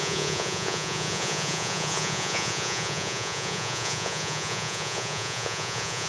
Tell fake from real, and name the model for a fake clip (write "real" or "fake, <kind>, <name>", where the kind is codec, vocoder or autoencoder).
fake, vocoder, Vocos